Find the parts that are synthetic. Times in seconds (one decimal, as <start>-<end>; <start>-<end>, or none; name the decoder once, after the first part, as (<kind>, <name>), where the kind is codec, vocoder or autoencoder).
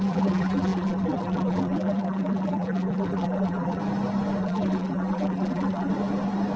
0.0-3.8 (vocoder, BigVGAN v2); 4.4-5.9